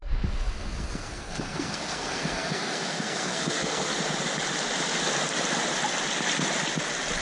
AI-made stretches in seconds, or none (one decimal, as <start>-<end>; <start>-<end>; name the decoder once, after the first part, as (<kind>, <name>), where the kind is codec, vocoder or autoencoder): 0.0-3.9 (codec, SNAC)